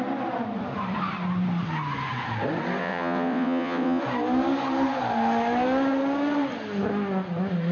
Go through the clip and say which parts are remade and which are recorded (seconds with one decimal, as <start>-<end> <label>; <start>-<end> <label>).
0.0-2.8 recorded; 2.8-4.0 remade; 4.0-7.7 recorded